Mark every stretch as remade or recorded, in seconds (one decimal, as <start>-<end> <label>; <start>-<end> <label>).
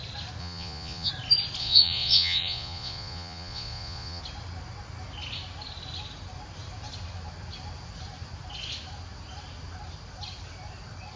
0.0-0.4 recorded; 0.4-1.1 remade; 1.1-1.6 recorded; 1.6-4.2 remade; 4.2-11.2 recorded